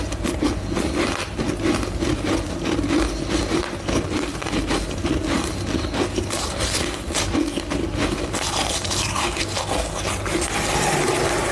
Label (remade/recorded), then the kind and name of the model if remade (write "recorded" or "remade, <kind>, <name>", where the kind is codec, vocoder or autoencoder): recorded